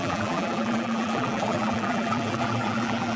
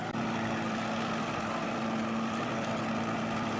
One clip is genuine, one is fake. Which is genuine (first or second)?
second